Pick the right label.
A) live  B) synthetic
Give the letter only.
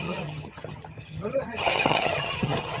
B